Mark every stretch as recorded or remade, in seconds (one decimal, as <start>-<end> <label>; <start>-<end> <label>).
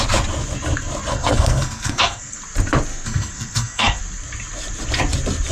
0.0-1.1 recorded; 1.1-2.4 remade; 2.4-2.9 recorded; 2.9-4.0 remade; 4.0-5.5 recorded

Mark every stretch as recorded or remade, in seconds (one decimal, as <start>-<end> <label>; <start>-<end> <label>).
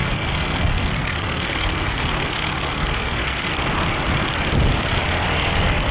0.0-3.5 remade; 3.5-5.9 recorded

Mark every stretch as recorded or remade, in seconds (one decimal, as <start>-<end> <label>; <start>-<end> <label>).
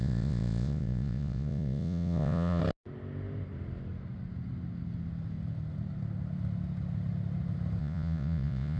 0.0-2.6 remade; 2.6-7.8 recorded; 7.8-8.8 remade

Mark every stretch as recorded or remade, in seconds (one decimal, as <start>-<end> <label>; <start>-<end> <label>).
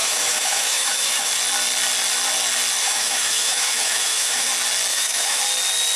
0.0-1.3 remade; 1.3-2.8 recorded; 2.8-4.5 remade; 4.5-4.9 recorded; 4.9-5.4 remade; 5.4-6.0 recorded